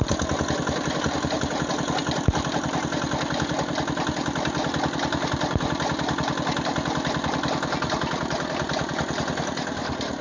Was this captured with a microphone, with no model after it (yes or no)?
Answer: yes